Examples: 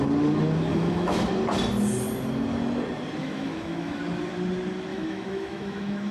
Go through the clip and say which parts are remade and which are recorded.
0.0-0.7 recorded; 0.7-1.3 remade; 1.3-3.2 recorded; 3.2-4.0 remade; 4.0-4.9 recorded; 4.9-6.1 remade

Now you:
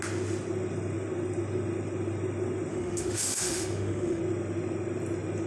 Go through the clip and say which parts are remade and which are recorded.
0.0-2.7 recorded; 2.7-4.2 remade; 4.2-5.5 recorded